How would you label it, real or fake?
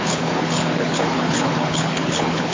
fake